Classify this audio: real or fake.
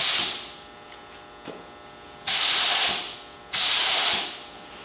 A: real